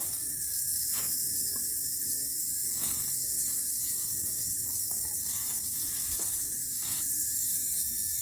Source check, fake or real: fake